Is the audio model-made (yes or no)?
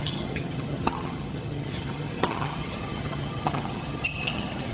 yes